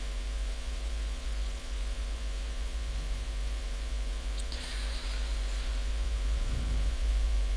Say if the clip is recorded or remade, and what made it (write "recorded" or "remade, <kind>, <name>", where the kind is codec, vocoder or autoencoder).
remade, vocoder, Vocos